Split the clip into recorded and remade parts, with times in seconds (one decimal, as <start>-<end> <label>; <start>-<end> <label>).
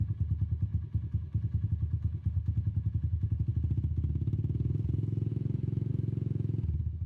0.0-5.3 recorded; 5.3-5.9 remade; 5.9-7.1 recorded